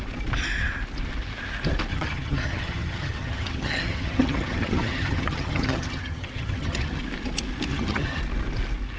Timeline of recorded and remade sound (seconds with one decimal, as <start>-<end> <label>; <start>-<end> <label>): 0.0-1.9 recorded; 1.9-7.0 remade; 7.0-7.7 recorded; 7.7-8.2 remade; 8.2-9.0 recorded